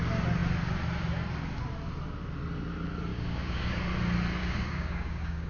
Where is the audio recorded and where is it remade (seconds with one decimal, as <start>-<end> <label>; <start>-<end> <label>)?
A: 0.0-3.1 recorded; 3.1-3.8 remade; 3.8-4.4 recorded; 4.4-5.5 remade

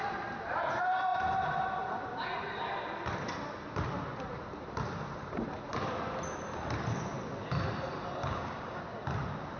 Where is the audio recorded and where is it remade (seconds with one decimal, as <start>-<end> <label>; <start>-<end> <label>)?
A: 0.0-8.2 recorded; 8.2-8.8 remade; 8.8-9.6 recorded

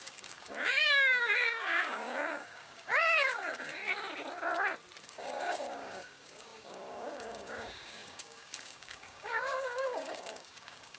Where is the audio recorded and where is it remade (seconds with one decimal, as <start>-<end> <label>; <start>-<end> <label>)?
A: 0.0-3.8 remade; 3.8-5.0 recorded; 5.0-11.0 remade

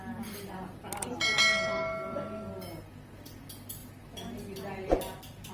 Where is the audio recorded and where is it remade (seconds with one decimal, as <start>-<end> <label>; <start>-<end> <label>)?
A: 0.0-1.5 recorded; 1.5-2.5 remade; 2.5-5.5 recorded

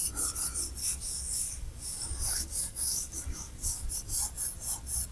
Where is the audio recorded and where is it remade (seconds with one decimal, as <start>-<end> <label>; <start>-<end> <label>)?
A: 0.0-0.8 recorded; 0.8-3.9 remade; 3.9-5.1 recorded